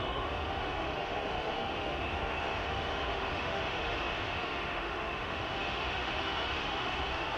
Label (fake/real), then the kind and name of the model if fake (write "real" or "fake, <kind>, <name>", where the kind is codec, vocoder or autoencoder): fake, autoencoder, DAC-VAE